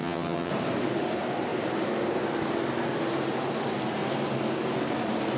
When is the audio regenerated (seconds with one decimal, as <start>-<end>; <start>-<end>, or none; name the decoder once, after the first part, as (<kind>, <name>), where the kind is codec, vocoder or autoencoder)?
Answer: 0.0-0.5 (vocoder, HiFi-GAN)